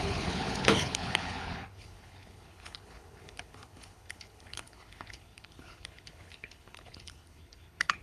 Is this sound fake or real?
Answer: fake